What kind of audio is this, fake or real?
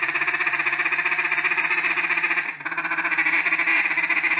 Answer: fake